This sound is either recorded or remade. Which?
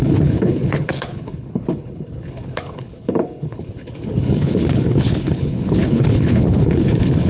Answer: remade